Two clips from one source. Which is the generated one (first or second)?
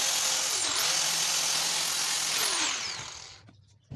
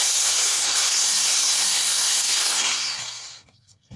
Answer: second